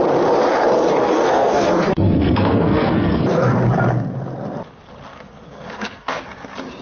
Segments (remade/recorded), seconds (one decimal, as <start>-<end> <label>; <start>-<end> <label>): 0.0-1.0 recorded; 1.0-3.6 remade; 3.6-5.1 recorded; 5.1-6.2 remade; 6.2-6.8 recorded